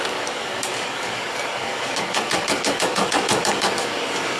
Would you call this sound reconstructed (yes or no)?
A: yes